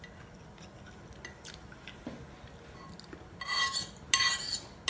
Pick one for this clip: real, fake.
real